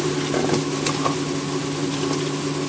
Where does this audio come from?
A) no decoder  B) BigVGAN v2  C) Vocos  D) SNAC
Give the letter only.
A